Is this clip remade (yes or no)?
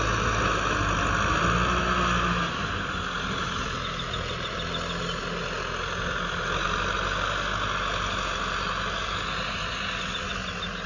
no